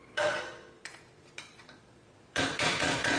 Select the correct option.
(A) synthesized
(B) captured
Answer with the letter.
A